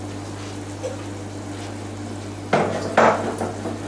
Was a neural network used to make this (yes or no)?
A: no